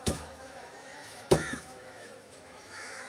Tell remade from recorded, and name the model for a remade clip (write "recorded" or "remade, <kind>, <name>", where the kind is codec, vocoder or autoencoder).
remade, autoencoder, DAC-VAE